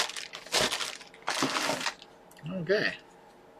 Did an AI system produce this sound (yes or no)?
no